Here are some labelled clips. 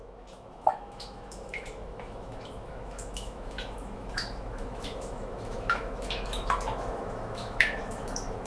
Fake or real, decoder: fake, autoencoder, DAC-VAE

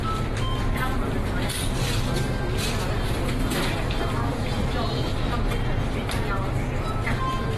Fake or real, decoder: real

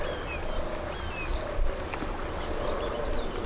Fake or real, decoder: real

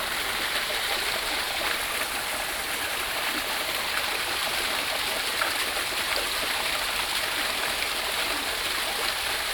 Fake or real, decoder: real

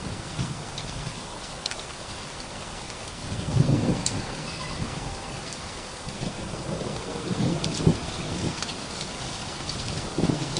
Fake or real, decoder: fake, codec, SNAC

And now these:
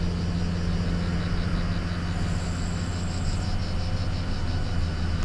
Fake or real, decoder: real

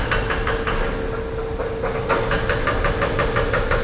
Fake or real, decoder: real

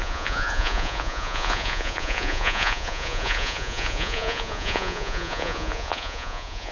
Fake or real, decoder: fake, vocoder, Vocos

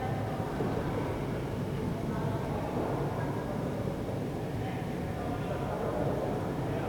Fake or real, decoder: real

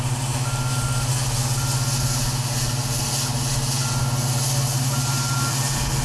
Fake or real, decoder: real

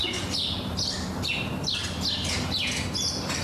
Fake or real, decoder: real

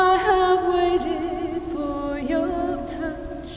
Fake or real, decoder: real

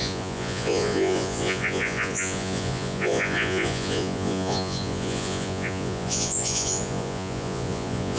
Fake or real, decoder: fake, vocoder, Vocos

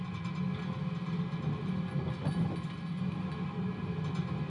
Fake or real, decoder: real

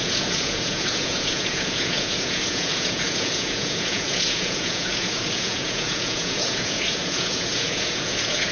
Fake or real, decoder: fake, vocoder, Vocos